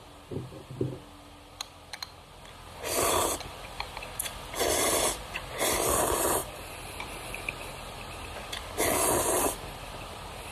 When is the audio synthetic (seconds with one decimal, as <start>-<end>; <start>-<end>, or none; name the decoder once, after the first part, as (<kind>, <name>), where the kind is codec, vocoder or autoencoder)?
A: 6.4-7.0 (vocoder, BigVGAN v2)